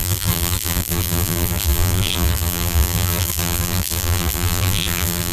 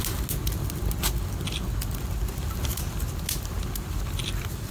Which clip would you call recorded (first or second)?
second